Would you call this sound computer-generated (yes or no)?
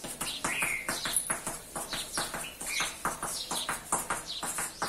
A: no